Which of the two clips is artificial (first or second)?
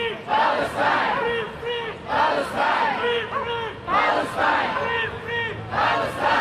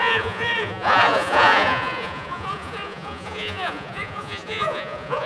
second